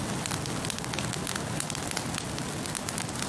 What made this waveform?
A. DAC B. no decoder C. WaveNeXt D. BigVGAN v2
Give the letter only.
B